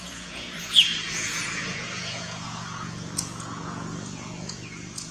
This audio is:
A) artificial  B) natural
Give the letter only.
A